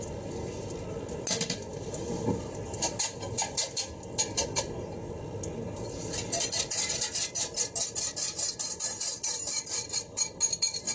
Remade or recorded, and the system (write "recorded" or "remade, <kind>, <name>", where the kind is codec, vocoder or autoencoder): recorded